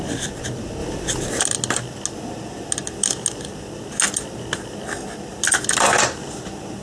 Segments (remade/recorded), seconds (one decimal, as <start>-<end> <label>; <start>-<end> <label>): 0.0-6.8 recorded